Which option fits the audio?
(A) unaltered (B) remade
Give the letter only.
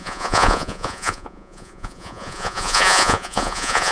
B